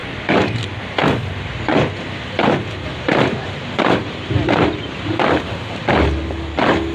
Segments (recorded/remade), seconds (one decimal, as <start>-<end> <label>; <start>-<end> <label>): 0.0-2.9 recorded; 2.9-5.6 remade; 5.6-6.9 recorded